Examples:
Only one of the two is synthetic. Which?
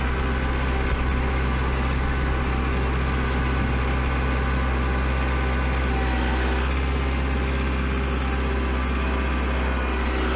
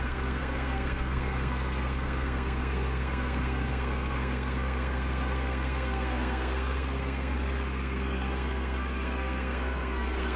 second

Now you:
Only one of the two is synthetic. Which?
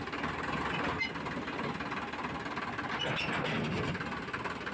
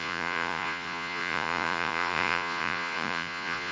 second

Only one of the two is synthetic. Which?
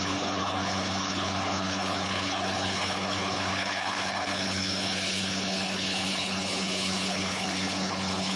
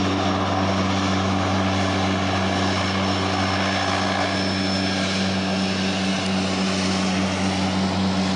first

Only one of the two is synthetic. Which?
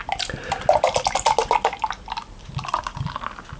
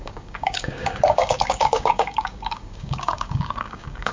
second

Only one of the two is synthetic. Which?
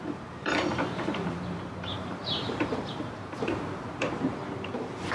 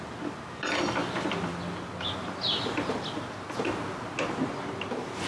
first